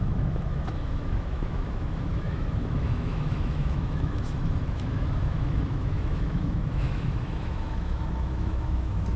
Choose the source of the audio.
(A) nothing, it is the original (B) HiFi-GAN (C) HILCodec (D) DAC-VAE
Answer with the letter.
D